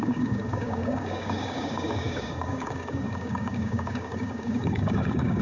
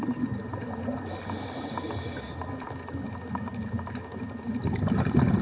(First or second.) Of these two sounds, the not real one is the first